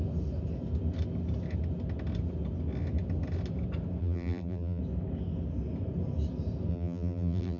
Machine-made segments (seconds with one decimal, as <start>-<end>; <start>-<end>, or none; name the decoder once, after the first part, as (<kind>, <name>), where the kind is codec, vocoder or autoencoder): 4.0-4.8 (vocoder, BigVGAN v2); 6.7-7.6